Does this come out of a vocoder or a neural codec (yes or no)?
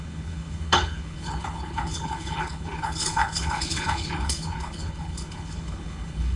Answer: yes